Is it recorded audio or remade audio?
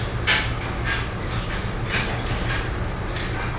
recorded